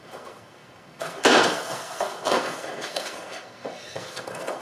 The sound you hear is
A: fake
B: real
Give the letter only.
A